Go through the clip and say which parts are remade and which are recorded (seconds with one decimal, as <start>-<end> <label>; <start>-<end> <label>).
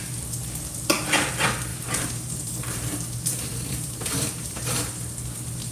0.0-1.7 recorded; 1.7-5.1 remade; 5.1-5.7 recorded